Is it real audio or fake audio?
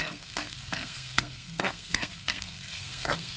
fake